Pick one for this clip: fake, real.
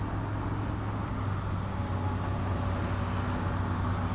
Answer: real